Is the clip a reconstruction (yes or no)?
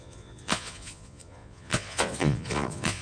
yes